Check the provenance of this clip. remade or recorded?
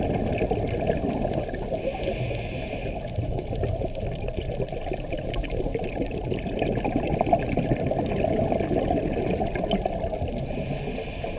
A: recorded